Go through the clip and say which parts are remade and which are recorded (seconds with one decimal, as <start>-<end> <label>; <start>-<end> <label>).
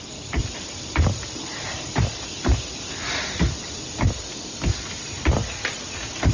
0.0-6.3 recorded